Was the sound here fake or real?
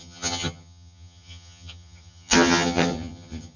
fake